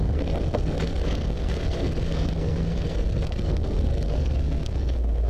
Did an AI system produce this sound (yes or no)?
yes